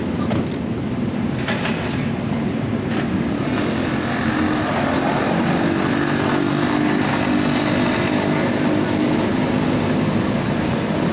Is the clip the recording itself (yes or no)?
yes